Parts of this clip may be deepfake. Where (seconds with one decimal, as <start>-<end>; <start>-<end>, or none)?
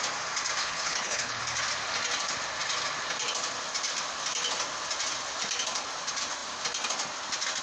0.6-1.4